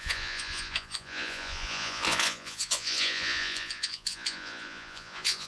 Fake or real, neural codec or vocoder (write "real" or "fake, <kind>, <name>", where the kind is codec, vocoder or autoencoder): fake, vocoder, Vocos